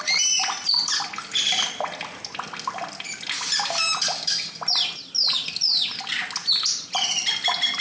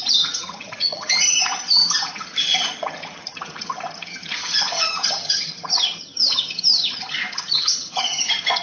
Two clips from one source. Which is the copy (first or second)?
second